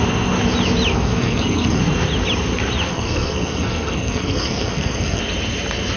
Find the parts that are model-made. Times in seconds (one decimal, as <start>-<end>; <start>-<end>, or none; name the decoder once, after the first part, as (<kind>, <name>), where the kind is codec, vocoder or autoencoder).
0.9-1.8 (codec, SNAC); 2.9-5.2